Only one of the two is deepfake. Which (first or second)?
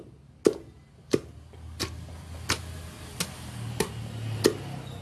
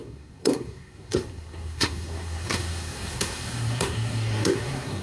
second